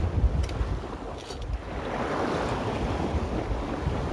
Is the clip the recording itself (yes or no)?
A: yes